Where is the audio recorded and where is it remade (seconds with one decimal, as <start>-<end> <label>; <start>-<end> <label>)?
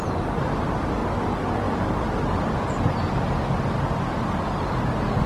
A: 0.0-5.3 recorded